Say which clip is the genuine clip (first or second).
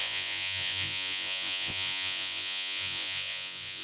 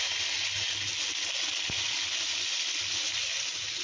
second